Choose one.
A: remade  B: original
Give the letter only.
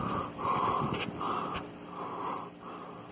B